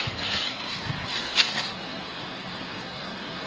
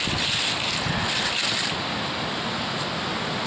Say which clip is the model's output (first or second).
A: first